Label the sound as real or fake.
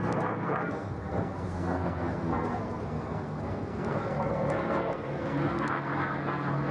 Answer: fake